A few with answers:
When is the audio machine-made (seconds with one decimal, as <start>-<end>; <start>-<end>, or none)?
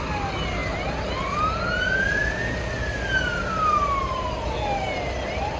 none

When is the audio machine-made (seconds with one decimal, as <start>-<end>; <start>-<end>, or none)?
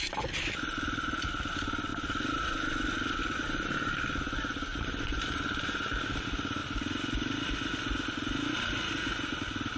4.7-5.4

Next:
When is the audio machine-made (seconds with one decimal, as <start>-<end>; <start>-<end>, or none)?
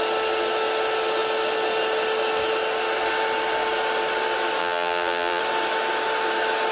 4.6-5.4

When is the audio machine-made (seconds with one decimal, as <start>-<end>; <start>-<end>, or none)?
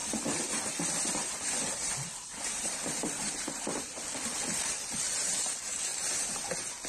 0.0-5.9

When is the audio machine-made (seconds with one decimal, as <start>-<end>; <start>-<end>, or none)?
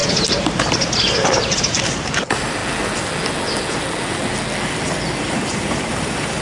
0.0-2.6; 5.2-6.4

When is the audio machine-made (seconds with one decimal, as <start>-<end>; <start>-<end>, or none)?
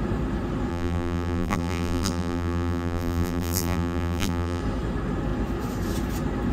0.7-4.6